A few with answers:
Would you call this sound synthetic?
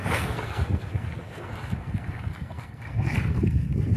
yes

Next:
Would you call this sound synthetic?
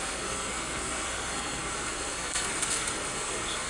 yes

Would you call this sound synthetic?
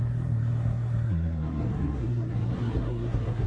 yes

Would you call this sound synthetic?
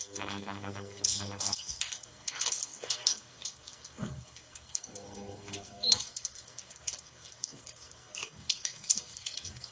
yes